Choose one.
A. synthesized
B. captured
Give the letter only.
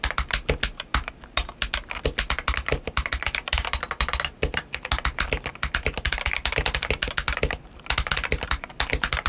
B